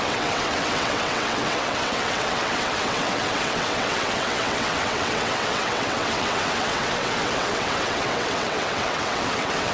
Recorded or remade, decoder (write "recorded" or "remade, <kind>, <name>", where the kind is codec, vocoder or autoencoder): remade, vocoder, WaveNeXt